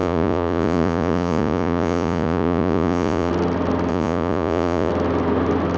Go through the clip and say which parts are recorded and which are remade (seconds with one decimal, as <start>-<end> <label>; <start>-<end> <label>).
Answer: 0.0-3.3 remade; 3.3-3.9 recorded; 3.9-4.9 remade; 4.9-5.8 recorded